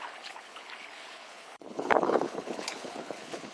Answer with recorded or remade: remade